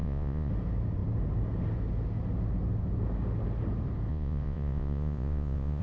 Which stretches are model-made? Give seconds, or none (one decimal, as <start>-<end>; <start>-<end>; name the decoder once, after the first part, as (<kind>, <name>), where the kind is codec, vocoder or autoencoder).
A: 0.0-0.5 (vocoder, Vocos); 4.1-5.8